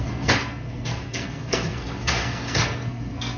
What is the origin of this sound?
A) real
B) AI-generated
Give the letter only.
B